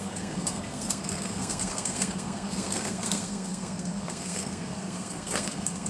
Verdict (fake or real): fake